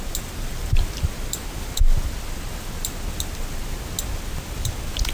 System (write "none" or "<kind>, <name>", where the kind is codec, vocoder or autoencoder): none